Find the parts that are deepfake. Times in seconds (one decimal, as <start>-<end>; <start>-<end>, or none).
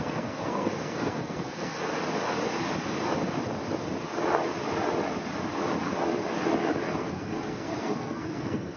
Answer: 0.0-1.9; 6.8-8.8